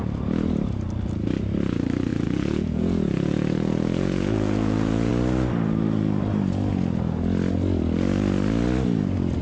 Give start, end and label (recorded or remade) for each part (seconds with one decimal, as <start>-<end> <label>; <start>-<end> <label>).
0.0-2.1 recorded; 2.1-5.1 remade; 5.1-9.4 recorded